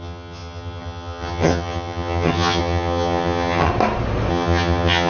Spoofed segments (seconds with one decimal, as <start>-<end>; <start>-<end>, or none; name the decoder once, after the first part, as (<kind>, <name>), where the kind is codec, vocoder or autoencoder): 0.0-3.7 (vocoder, HiFi-GAN); 4.3-5.1